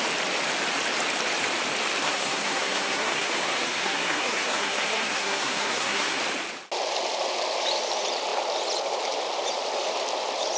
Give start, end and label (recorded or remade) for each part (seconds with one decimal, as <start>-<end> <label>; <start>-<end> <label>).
0.0-2.0 recorded; 2.0-6.2 remade; 6.2-10.6 recorded